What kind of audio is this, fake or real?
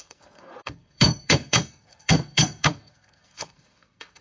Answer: fake